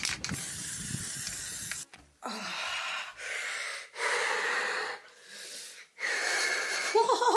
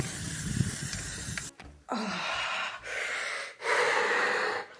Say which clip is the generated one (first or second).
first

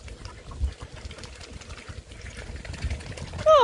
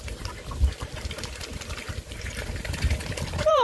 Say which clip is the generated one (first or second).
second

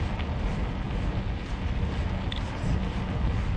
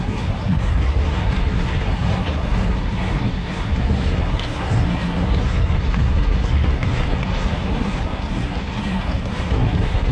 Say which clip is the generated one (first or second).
second